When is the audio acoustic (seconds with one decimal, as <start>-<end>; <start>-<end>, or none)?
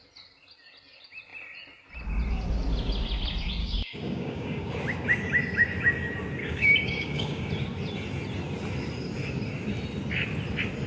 0.0-3.6; 4.7-6.4; 7.5-10.9